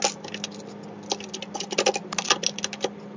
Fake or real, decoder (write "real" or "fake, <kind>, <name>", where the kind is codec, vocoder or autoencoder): real